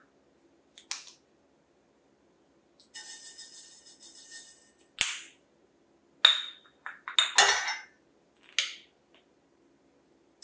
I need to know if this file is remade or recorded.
recorded